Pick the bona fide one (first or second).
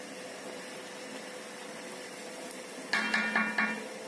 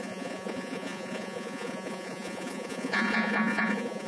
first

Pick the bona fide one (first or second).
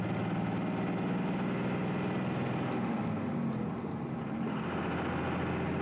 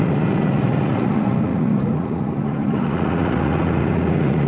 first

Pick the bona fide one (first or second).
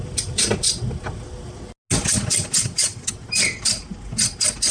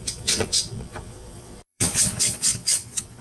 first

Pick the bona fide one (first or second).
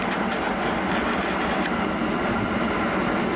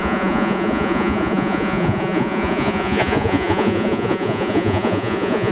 first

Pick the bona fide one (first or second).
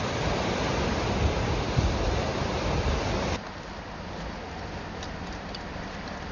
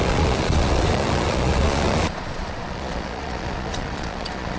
first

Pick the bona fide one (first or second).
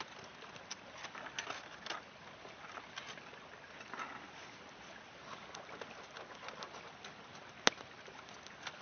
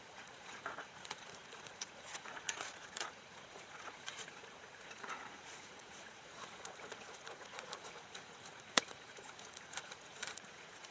first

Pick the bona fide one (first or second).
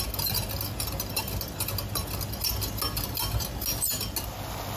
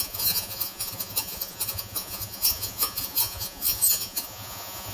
first